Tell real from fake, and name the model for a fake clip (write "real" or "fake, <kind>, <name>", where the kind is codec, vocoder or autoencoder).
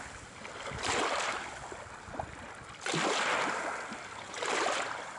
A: real